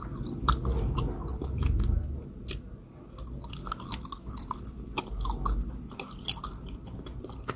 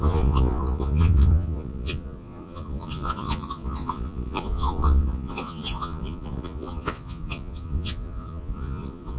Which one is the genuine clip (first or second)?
first